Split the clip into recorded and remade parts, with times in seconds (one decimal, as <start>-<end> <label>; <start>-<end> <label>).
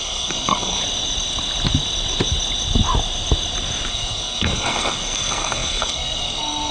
0.0-0.8 remade; 0.8-3.9 recorded; 3.9-6.7 remade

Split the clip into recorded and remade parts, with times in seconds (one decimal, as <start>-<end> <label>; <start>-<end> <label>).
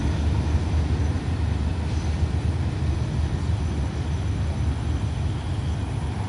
0.0-6.3 recorded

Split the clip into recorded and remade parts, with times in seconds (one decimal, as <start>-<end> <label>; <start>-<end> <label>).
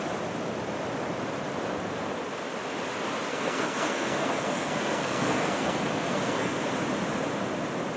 0.0-3.3 recorded; 3.3-6.7 remade; 6.7-8.0 recorded